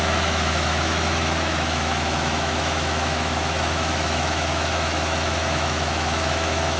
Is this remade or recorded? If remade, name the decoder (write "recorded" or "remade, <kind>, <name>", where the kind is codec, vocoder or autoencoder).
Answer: remade, autoencoder, DAC-VAE